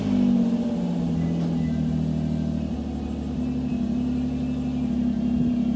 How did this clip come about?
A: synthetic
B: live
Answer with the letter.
B